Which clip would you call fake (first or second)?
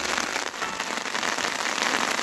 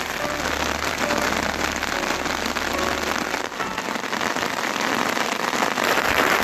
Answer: second